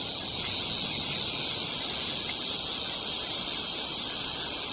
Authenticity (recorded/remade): recorded